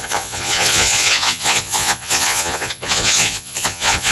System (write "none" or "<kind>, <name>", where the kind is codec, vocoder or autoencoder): vocoder, Vocos